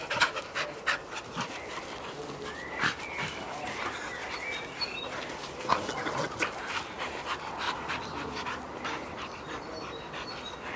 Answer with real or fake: real